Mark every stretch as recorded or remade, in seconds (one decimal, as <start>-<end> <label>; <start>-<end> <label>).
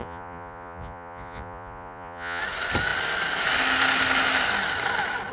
0.0-2.4 remade; 2.4-5.3 recorded